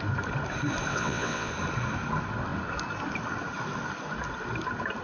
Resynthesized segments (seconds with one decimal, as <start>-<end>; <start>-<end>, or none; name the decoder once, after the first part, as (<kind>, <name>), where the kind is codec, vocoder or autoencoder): 0.9-1.5 (vocoder, WaveNeXt)